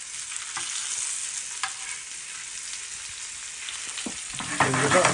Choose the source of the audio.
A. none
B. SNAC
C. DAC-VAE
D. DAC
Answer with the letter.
A